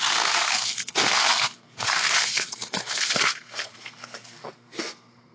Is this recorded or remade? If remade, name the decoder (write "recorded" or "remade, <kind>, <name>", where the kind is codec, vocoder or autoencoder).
remade, codec, SNAC